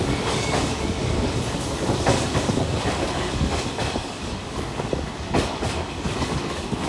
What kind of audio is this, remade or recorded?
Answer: remade